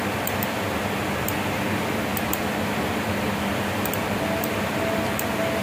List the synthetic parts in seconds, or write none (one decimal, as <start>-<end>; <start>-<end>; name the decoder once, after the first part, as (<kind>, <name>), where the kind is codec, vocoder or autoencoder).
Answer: none